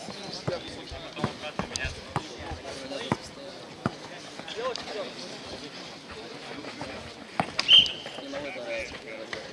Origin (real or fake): real